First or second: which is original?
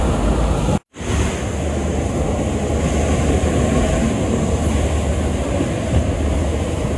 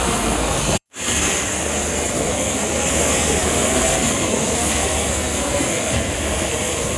first